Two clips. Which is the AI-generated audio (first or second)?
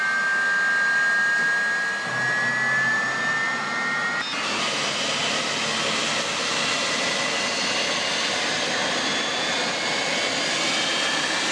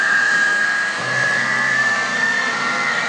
second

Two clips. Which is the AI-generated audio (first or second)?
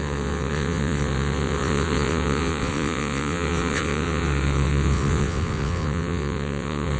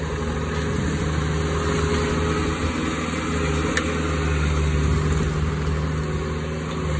first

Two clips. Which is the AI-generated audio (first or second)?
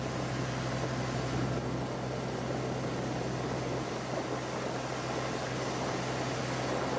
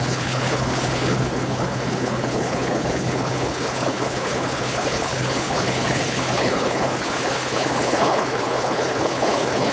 second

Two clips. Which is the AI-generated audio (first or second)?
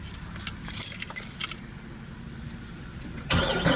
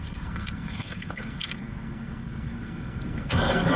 second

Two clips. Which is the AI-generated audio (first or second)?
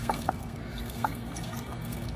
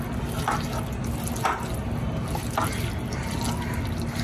first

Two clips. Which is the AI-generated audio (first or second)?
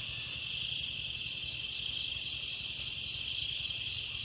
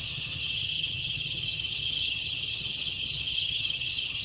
second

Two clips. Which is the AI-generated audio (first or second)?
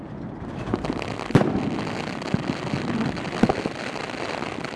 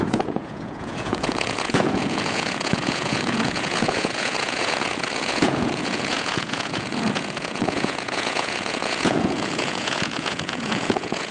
second